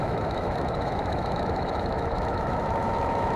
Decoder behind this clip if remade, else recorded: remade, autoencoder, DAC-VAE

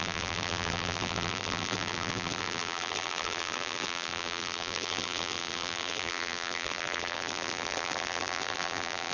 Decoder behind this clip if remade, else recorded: remade, vocoder, BigVGAN v2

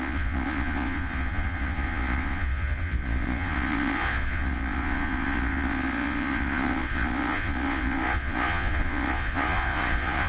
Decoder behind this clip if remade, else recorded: remade, vocoder, Vocos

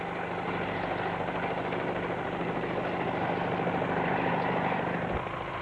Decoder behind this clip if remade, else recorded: recorded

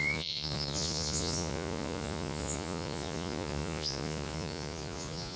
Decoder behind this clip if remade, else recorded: remade, vocoder, Vocos